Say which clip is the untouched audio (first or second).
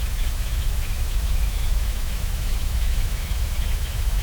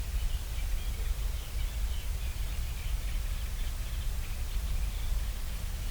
second